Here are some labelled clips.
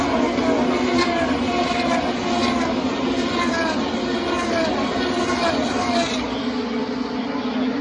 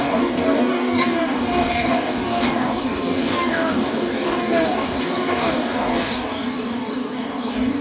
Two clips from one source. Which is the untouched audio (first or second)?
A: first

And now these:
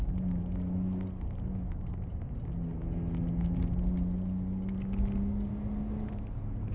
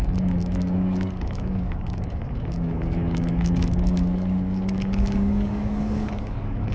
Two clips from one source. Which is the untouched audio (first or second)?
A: first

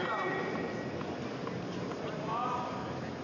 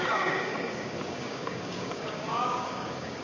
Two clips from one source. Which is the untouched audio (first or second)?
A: first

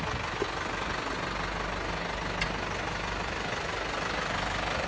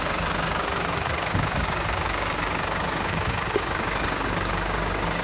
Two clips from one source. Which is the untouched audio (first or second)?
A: first